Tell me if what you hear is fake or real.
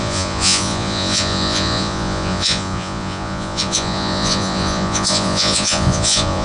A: fake